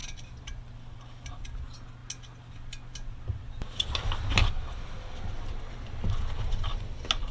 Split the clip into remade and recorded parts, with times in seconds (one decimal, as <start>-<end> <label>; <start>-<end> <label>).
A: 0.0-7.3 recorded

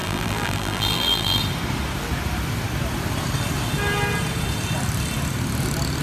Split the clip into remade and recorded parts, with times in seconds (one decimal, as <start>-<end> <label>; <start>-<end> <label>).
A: 0.0-1.4 remade; 1.4-6.0 recorded